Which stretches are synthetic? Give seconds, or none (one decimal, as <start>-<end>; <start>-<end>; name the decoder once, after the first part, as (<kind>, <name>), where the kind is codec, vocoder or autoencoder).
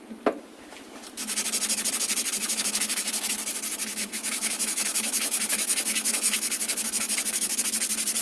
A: 2.4-3.3 (autoencoder, DAC-VAE); 3.9-7.6